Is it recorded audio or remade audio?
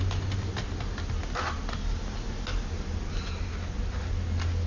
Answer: recorded